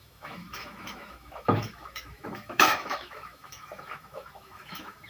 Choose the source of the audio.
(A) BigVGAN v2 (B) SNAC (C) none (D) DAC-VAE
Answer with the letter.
D